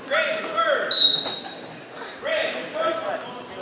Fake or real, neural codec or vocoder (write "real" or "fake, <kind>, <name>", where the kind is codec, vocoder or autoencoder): real